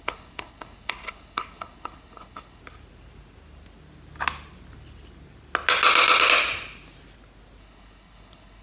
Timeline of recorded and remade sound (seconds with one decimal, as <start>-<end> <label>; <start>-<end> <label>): 0.0-2.6 remade; 2.6-7.6 recorded; 7.6-8.6 remade

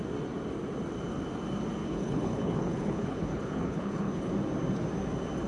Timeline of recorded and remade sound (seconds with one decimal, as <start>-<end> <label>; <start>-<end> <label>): 0.0-1.8 recorded; 1.8-4.3 remade; 4.3-5.5 recorded

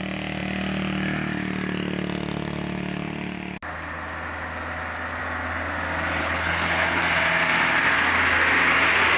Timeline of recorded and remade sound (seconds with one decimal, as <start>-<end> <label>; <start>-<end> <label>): 0.0-6.2 recorded; 6.2-7.0 remade; 7.0-9.2 recorded

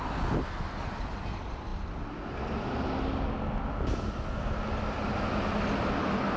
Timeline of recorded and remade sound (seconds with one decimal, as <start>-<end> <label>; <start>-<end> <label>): 0.0-6.4 recorded

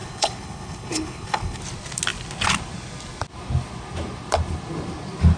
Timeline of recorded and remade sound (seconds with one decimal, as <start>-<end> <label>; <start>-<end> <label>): 0.0-1.6 remade; 1.6-5.4 recorded